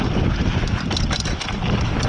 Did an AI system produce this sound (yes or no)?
no